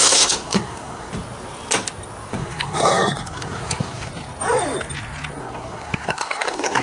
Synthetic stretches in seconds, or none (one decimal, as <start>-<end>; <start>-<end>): 0.0-1.1; 2.3-4.1; 5.4-6.8